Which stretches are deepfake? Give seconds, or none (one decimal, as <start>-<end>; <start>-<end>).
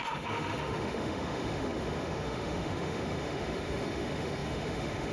0.0-5.1